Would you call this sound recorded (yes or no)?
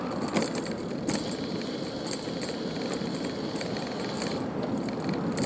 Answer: yes